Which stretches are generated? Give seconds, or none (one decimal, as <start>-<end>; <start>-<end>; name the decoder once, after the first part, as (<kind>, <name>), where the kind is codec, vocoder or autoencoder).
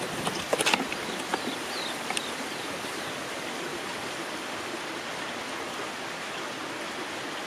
1.3-3.2 (vocoder, BigVGAN v2); 3.7-4.7